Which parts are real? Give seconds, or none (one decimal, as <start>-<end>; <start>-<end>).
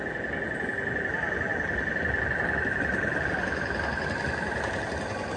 0.0-5.4